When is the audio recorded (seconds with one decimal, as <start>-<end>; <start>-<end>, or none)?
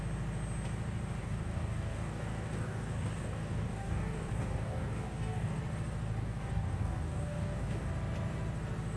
0.0-1.2; 5.6-6.2; 7.9-9.0